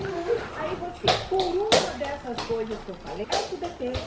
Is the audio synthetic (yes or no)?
no